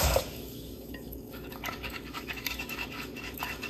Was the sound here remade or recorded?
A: remade